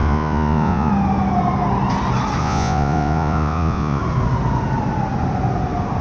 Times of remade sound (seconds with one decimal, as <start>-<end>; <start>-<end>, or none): 0.0-0.9; 2.4-4.0